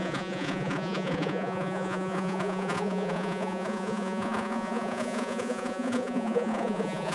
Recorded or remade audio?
remade